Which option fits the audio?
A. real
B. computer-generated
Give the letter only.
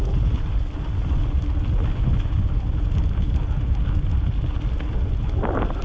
A